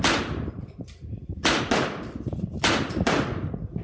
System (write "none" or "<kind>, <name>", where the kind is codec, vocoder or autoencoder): none